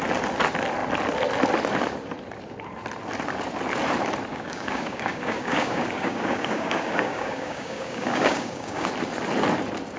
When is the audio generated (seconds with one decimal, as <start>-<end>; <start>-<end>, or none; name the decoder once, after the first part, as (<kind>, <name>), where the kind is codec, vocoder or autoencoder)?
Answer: 4.3-8.9 (codec, DAC)